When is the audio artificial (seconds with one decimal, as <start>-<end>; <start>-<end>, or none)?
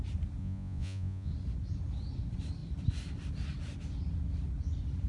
0.4-1.3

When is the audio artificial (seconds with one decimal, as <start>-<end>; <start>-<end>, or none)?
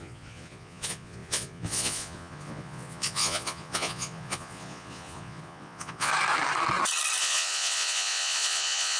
0.0-6.1; 7.2-9.0